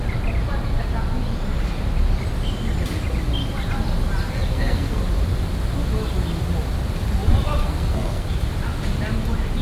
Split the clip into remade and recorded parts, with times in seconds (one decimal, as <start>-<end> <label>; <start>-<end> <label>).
0.0-4.5 recorded; 4.5-5.0 remade; 5.0-7.6 recorded; 7.6-8.4 remade; 8.4-9.6 recorded